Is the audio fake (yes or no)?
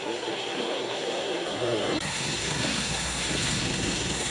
yes